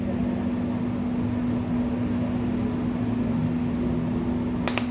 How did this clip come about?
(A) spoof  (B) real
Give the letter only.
B